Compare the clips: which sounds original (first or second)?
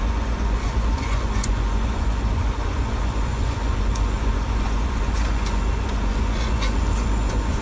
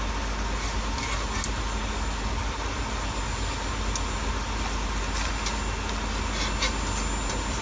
second